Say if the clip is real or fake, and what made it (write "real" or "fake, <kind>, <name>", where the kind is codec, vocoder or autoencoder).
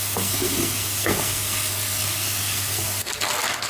fake, codec, SNAC